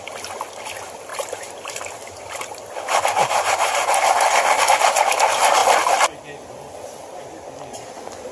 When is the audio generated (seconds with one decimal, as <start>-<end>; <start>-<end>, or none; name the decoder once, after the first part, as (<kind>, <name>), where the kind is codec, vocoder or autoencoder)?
1.1-4.6 (vocoder, BigVGAN v2)